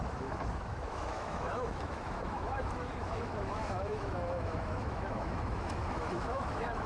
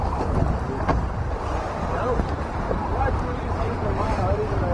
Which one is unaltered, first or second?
second